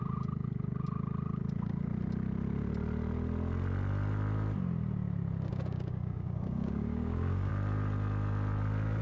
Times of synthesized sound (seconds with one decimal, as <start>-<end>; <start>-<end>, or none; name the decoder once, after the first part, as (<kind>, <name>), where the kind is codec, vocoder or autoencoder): 5.5-7.5 (codec, DAC)